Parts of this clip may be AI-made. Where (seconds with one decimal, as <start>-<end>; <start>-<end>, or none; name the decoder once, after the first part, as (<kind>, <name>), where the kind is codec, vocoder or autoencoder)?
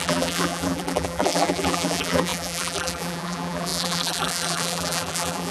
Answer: 0.0-5.5 (vocoder, BigVGAN v2)